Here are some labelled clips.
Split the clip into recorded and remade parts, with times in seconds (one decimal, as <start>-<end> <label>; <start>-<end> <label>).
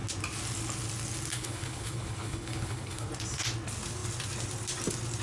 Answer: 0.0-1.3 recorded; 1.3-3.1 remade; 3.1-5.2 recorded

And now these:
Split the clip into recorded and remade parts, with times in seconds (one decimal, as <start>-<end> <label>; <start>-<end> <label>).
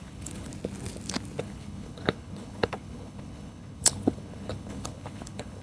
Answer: 0.0-0.5 remade; 0.5-1.4 recorded; 1.4-5.6 remade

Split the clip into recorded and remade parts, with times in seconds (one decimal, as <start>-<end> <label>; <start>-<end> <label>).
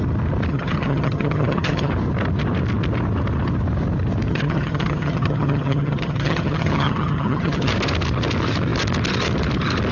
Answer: 0.0-0.5 recorded; 0.5-1.9 remade; 1.9-4.3 recorded; 4.3-7.7 remade; 7.7-9.9 recorded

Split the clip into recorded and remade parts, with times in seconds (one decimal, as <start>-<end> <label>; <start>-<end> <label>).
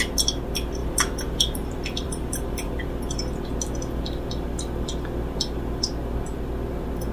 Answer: 0.0-0.8 recorded; 0.8-2.9 remade; 2.9-7.1 recorded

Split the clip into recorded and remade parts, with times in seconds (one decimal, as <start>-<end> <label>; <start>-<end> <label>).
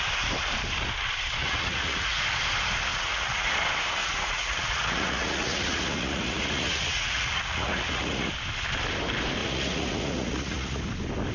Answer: 0.0-1.4 recorded; 1.4-2.2 remade; 2.2-2.9 recorded; 2.9-3.5 remade; 3.5-4.0 recorded; 4.0-8.3 remade; 8.3-9.4 recorded; 9.4-10.8 remade; 10.8-11.3 recorded